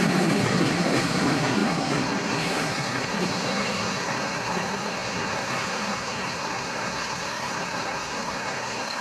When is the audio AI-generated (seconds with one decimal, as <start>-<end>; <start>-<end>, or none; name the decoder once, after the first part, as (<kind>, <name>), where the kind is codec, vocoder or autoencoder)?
0.0-9.0 (codec, SNAC)